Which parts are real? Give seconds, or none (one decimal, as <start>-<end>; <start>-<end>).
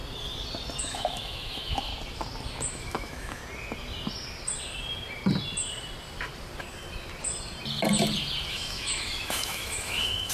0.0-0.8; 1.9-2.7; 3.4-8.5